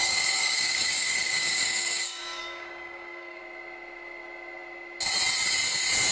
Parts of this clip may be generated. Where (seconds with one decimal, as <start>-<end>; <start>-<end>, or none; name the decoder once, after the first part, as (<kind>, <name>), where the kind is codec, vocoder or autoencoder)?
0.0-3.4 (codec, DAC)